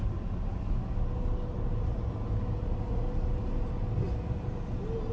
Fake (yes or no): no